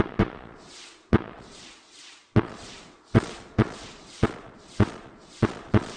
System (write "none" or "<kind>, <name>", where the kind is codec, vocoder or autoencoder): vocoder, Vocos